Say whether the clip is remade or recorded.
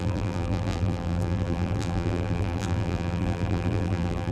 remade